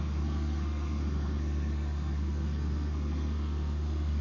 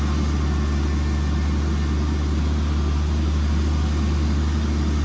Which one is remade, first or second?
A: first